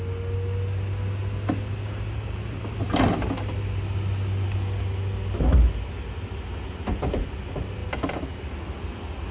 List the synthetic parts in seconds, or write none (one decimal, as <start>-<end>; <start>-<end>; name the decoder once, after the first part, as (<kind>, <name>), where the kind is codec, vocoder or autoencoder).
7.8-8.4 (vocoder, BigVGAN v2)